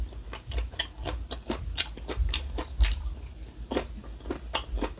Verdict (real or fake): real